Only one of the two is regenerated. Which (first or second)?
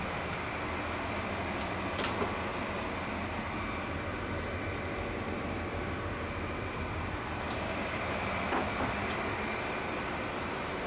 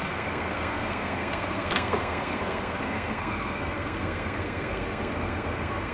second